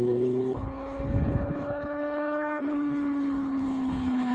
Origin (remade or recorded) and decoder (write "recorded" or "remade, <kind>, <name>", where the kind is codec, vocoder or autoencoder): remade, codec, HILCodec